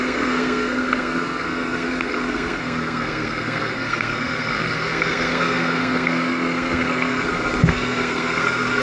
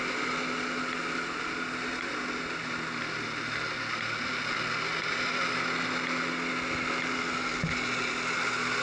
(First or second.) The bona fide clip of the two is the second